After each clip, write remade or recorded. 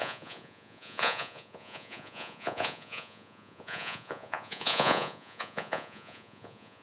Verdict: remade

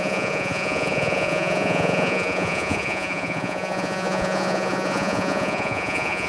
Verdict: remade